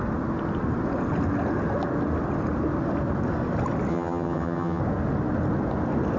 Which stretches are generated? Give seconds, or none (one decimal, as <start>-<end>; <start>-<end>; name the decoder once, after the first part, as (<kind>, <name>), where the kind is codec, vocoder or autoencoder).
3.9-4.8 (vocoder, HiFi-GAN)

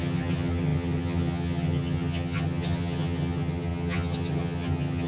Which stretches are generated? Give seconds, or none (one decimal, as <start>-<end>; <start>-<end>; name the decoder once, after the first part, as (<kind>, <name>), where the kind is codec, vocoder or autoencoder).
0.0-5.1 (vocoder, HiFi-GAN)